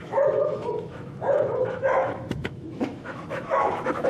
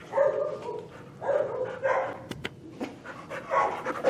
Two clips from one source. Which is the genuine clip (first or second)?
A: second